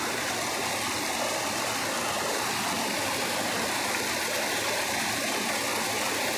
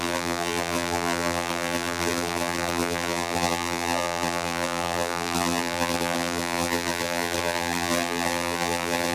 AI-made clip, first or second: second